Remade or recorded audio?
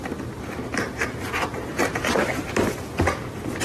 remade